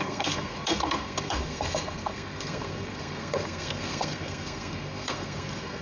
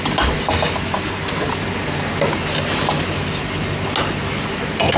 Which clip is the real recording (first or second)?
second